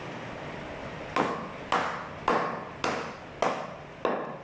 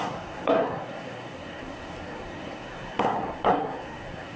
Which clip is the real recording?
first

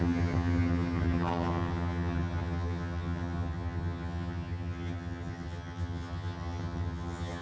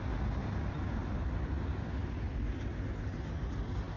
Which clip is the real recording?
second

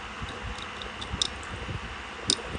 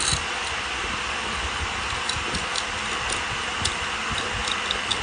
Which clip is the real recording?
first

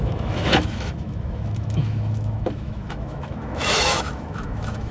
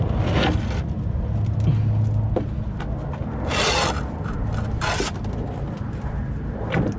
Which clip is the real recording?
second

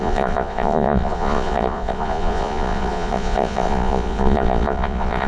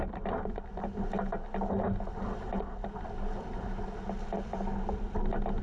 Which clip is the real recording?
second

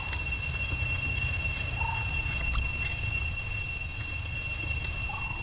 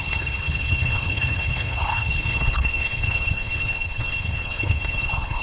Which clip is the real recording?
first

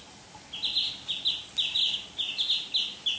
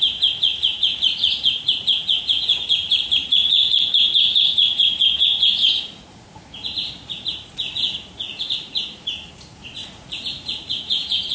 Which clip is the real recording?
first